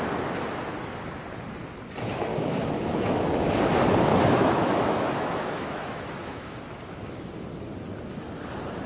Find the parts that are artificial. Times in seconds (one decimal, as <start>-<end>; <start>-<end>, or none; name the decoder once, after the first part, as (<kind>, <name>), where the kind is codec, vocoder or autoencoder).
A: 2.3-3.3 (autoencoder, DAC-VAE); 4.1-6.6